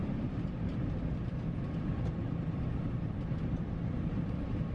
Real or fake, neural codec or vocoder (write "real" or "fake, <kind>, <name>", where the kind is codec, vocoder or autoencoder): fake, vocoder, BigVGAN v2